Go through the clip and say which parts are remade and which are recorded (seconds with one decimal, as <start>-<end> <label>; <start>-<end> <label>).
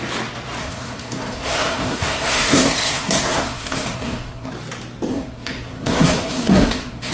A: 0.0-0.6 recorded; 0.6-4.5 remade; 4.5-5.1 recorded; 5.1-7.1 remade